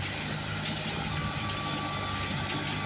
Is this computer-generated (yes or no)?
no